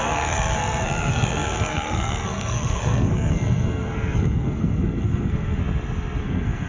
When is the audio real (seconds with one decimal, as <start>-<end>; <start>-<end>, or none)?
5.6-6.2